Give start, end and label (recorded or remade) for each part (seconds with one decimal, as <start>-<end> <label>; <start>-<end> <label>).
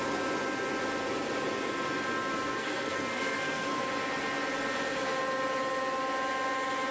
0.0-2.3 recorded; 2.3-3.8 remade; 3.8-6.9 recorded